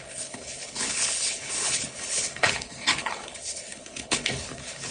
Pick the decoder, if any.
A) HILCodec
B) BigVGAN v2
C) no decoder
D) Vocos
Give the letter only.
A